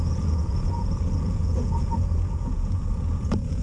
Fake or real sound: fake